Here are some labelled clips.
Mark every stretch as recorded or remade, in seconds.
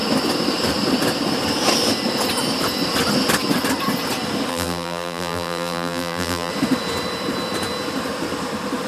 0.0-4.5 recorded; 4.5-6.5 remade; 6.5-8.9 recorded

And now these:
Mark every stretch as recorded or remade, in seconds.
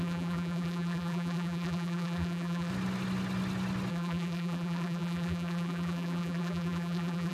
0.0-2.7 remade; 2.7-3.9 recorded; 3.9-7.3 remade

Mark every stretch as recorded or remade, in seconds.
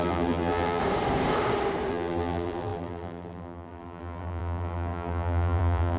0.0-0.8 remade; 0.8-1.9 recorded; 1.9-6.0 remade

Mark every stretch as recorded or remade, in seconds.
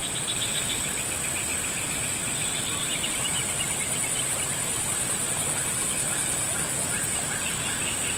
0.0-0.9 remade; 0.9-1.5 recorded; 1.5-5.3 remade; 5.3-8.2 recorded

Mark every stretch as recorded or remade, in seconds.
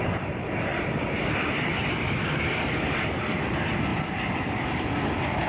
0.0-0.7 recorded; 0.7-1.8 remade; 1.8-3.9 recorded; 3.9-5.5 remade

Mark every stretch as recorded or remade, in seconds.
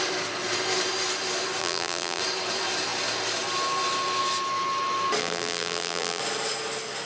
0.0-1.6 recorded; 1.6-2.2 remade; 2.2-5.2 recorded; 5.2-6.2 remade; 6.2-7.1 recorded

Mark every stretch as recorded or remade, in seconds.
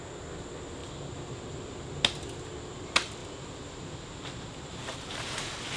0.0-5.8 recorded